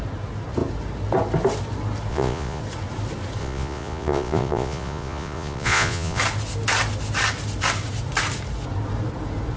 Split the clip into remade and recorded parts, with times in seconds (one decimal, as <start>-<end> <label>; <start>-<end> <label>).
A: 0.0-2.1 recorded; 2.1-2.6 remade; 2.6-3.4 recorded; 3.4-6.2 remade; 6.2-9.6 recorded